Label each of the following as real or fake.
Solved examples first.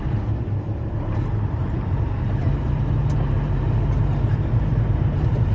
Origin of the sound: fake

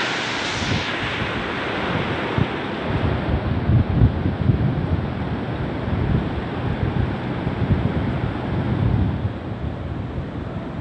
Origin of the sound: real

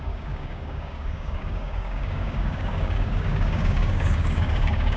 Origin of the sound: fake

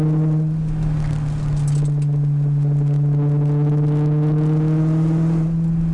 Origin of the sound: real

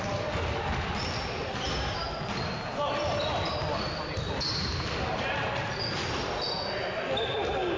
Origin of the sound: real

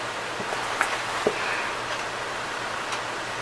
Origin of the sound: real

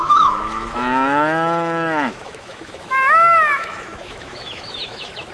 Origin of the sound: fake